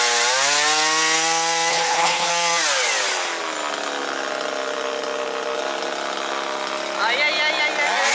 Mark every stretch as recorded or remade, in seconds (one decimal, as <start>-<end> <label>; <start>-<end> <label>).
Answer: 0.0-1.7 recorded; 1.7-2.3 remade; 2.3-8.1 recorded